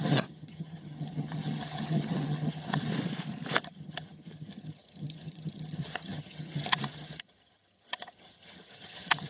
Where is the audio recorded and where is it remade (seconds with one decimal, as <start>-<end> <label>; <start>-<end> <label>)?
0.0-2.9 remade; 2.9-3.6 recorded; 3.6-9.3 remade